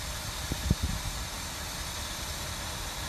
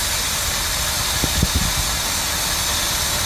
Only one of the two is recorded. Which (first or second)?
second